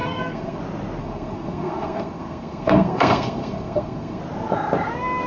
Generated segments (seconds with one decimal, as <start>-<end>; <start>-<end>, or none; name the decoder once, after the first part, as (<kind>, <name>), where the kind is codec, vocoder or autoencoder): 0.0-0.6 (codec, SNAC); 1.0-4.2